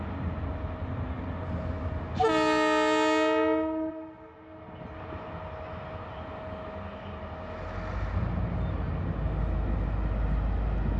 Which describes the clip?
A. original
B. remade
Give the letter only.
A